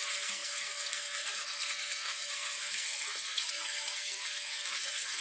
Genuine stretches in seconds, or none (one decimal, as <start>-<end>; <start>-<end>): none